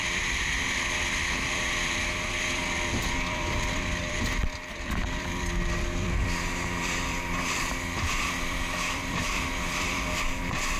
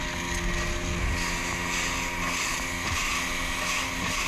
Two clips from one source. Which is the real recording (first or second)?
second